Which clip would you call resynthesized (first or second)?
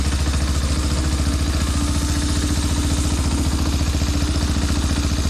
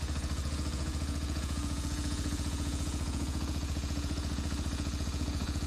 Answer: second